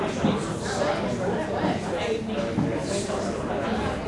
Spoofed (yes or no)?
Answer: no